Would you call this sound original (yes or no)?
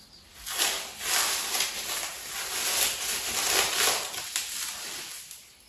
yes